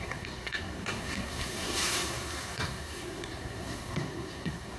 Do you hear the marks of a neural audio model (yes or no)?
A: yes